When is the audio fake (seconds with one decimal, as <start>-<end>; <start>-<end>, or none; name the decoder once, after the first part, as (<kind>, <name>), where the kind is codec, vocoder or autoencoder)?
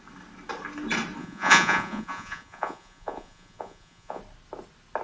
1.2-4.2 (vocoder, Vocos)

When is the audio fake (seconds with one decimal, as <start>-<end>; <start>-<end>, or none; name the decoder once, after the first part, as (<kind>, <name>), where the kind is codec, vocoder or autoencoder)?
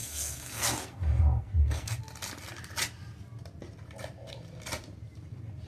0.0-2.0 (codec, SNAC)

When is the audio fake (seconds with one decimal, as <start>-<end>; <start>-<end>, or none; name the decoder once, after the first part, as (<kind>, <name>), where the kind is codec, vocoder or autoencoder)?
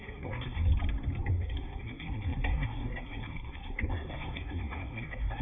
0.0-0.7 (codec, SNAC); 1.3-5.4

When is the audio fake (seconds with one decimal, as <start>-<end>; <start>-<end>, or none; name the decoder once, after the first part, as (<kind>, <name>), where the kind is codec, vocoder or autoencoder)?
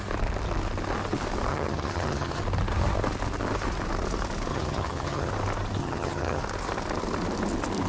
1.5-2.4 (vocoder, HiFi-GAN); 4.5-5.3; 5.8-6.4